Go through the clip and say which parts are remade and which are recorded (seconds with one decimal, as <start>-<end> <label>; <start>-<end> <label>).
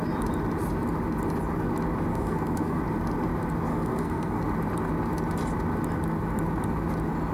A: 0.0-2.1 recorded; 2.1-2.8 remade; 2.8-3.7 recorded; 3.7-4.4 remade; 4.4-7.3 recorded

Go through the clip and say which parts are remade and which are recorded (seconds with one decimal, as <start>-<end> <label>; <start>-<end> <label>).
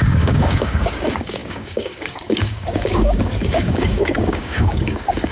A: 0.0-5.3 remade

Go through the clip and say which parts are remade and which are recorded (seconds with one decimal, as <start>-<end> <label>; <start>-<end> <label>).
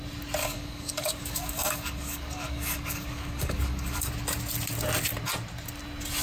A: 0.0-0.4 recorded; 0.4-4.1 remade; 4.1-6.2 recorded